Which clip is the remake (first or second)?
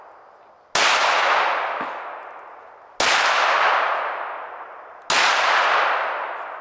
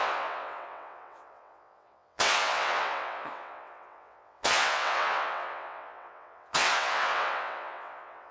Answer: second